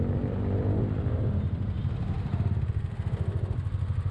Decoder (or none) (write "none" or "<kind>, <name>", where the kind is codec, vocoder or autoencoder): none